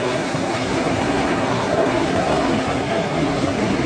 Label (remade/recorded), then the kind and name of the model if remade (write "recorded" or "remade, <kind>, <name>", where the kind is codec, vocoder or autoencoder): remade, codec, SNAC